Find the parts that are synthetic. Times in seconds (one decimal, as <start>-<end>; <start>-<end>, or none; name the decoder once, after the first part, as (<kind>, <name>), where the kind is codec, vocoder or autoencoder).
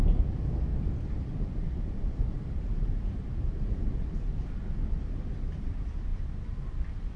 0.7-4.6 (vocoder, BigVGAN v2)